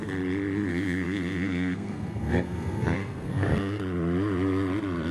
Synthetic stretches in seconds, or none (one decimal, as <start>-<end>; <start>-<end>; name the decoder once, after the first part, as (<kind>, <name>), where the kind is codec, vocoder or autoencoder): 0.7-3.8 (codec, SNAC)

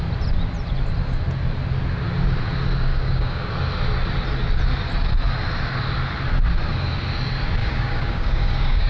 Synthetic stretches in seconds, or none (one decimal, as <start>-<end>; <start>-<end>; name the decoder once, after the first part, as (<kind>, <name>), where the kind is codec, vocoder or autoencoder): 2.9-3.5 (codec, DAC); 7.6-8.9

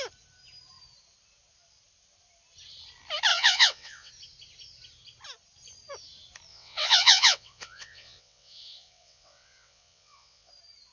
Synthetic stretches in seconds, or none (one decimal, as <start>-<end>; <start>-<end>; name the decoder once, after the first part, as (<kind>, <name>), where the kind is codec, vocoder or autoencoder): 3.3-4.1 (vocoder, WaveNeXt); 6.5-10.5

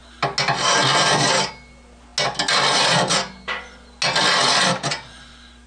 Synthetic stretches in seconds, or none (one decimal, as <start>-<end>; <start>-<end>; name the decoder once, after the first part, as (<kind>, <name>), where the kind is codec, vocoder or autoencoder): none

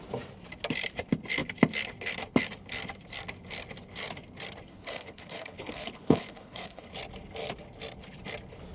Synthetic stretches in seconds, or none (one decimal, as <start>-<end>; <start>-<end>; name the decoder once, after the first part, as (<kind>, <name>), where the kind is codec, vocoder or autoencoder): 4.7-6.9 (codec, HILCodec)

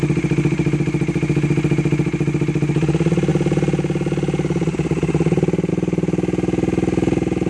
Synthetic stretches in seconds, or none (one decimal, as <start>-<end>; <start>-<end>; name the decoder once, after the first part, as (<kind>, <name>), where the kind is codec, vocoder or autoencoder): none